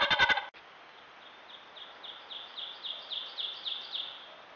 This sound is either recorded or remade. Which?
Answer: recorded